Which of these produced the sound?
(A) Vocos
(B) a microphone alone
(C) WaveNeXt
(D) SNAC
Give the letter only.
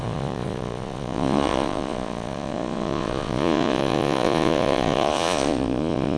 A